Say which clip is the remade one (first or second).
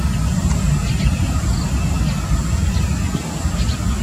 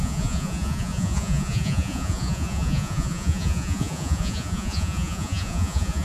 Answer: second